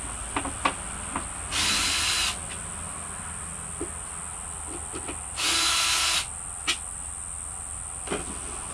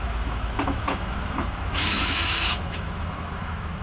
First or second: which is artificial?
second